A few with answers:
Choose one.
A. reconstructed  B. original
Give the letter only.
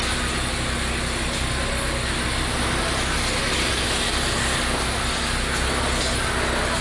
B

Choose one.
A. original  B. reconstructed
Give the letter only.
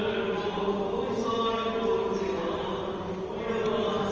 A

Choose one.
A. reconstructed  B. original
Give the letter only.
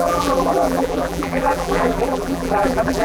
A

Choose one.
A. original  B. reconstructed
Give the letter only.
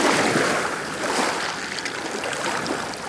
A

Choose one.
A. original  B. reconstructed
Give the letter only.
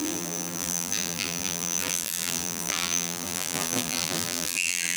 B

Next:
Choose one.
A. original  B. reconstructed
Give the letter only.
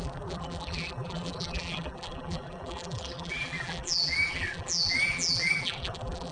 B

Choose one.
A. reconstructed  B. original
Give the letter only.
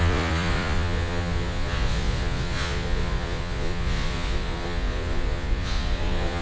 A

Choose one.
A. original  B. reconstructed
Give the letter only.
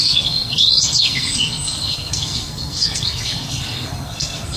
B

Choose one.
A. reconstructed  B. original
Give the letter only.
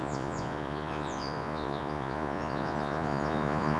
A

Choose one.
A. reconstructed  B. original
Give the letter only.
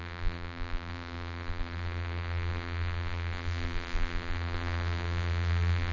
A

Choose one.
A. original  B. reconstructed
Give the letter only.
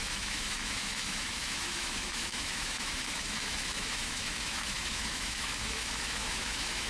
B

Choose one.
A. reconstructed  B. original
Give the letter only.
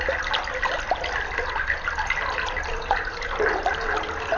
B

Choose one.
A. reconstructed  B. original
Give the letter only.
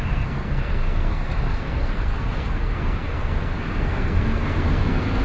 A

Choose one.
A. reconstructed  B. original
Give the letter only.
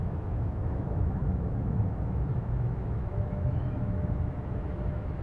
A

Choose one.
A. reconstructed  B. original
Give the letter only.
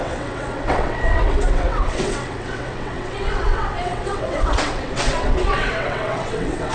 A